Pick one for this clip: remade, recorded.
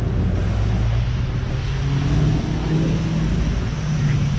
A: recorded